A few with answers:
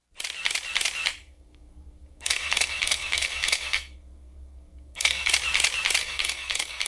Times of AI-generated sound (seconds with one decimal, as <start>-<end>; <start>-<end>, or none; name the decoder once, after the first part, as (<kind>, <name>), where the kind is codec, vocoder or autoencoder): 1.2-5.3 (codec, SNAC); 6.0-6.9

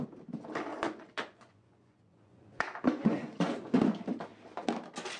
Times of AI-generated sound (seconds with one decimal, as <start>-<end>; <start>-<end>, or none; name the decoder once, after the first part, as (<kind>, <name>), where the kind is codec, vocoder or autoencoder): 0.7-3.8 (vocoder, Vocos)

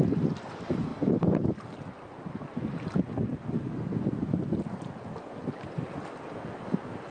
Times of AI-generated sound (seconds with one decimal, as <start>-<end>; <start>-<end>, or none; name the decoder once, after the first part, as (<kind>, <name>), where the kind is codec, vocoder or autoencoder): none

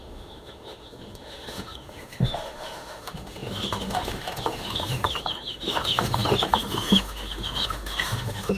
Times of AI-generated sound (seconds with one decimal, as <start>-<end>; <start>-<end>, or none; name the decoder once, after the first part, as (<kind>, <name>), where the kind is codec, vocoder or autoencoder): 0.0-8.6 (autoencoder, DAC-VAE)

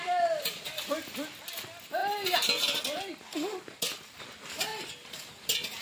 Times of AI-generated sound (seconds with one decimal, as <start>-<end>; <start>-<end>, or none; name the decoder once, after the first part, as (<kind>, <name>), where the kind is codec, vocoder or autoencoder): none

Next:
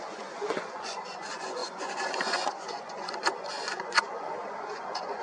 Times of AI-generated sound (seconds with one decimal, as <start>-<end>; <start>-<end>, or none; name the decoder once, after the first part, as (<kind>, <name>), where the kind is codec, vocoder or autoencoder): 0.0-5.2 (vocoder, Vocos)